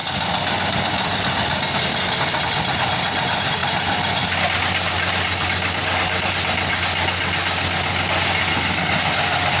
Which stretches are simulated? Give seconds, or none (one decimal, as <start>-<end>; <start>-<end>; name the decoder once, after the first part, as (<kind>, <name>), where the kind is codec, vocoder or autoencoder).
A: none